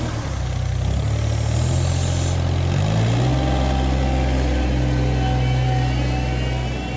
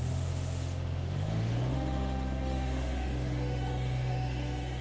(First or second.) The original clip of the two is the first